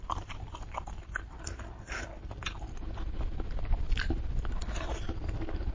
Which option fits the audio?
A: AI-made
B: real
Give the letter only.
A